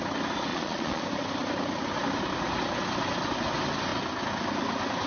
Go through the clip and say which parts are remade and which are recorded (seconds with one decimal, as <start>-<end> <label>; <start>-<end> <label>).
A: 0.0-0.5 recorded; 0.5-1.0 remade; 1.0-5.1 recorded